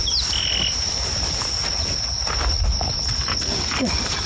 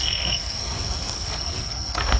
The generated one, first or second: second